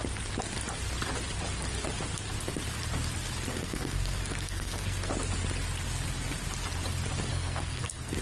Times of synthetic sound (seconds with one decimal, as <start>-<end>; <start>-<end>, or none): 3.5-5.1; 7.3-8.2